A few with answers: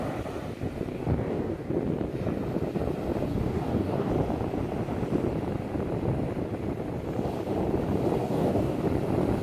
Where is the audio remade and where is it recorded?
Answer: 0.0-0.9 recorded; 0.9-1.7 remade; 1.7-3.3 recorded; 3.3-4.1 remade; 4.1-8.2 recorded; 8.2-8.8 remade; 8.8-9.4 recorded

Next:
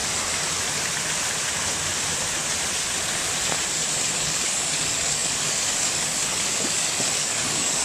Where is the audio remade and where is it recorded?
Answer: 0.0-4.1 recorded; 4.1-7.8 remade

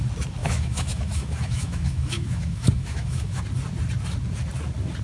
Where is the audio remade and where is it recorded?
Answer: 0.0-0.4 recorded; 0.4-3.4 remade; 3.4-5.0 recorded

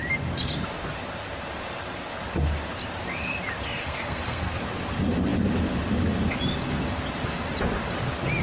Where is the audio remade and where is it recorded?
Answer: 0.0-3.8 recorded; 3.8-4.6 remade; 4.6-8.4 recorded

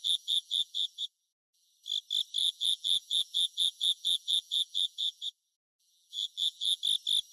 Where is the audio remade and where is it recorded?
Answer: 0.0-1.7 remade; 1.7-2.4 recorded; 2.4-6.8 remade; 6.8-7.3 recorded

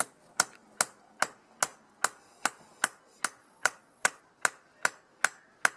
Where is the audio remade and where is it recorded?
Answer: 0.0-3.4 recorded; 3.4-4.2 remade; 4.2-5.8 recorded